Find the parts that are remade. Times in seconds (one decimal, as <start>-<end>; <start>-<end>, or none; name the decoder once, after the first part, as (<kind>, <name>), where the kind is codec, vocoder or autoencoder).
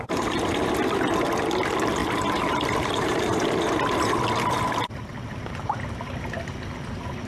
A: 2.0-3.4 (vocoder, BigVGAN v2)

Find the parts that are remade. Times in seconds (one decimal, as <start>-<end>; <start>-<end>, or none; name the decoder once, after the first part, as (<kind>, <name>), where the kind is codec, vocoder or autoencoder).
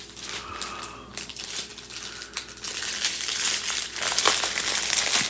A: 1.1-1.7 (vocoder, BigVGAN v2); 2.7-5.3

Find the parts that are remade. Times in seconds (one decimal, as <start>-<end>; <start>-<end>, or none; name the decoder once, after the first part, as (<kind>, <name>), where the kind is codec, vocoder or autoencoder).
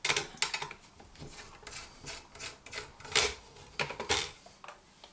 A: none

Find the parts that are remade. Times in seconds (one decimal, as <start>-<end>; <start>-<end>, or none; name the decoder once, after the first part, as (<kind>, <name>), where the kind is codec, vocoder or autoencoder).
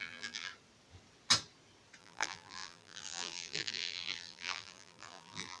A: 0.0-0.5 (vocoder, BigVGAN v2); 2.0-5.6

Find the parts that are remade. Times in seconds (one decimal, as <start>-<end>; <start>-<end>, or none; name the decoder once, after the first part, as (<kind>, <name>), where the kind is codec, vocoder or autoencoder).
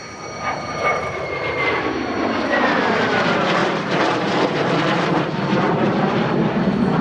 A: 0.9-1.8 (vocoder, BigVGAN v2); 3.6-6.3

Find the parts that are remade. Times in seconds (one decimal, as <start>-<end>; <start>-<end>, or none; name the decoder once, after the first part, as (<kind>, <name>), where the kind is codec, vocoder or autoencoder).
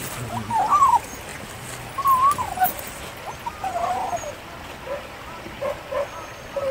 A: none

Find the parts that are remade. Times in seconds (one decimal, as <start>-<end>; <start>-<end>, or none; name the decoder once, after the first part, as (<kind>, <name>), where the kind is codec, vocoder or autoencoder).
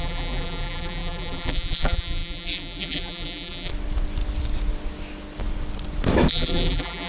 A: 0.0-3.7 (vocoder, BigVGAN v2); 6.3-7.1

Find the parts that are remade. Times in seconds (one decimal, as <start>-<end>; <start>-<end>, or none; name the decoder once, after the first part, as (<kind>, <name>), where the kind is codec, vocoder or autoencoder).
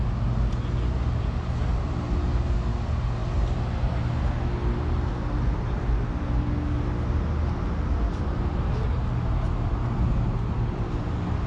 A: none